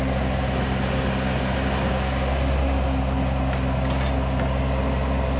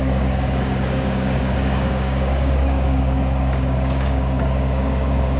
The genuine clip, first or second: first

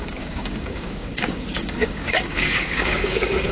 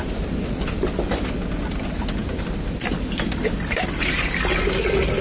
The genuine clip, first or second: second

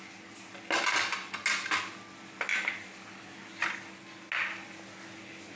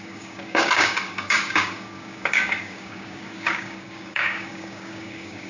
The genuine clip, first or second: first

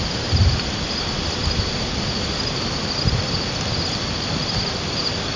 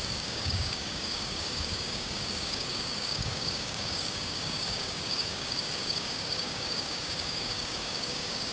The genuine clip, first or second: first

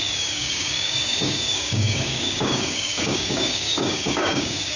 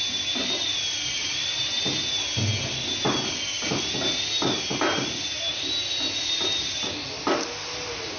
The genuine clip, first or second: second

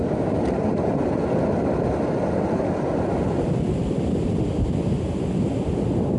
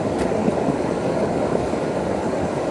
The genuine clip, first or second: first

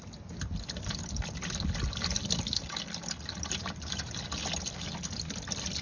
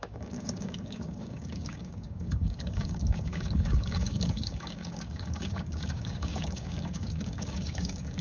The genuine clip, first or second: first